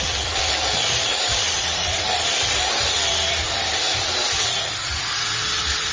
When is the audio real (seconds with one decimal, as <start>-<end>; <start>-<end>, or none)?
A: 0.0-1.1; 2.9-5.9